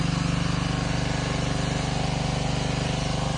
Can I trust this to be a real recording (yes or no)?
yes